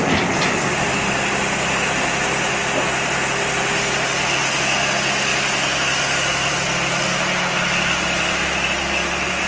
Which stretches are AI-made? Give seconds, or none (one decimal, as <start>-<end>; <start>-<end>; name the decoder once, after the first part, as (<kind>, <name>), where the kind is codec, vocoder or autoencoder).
none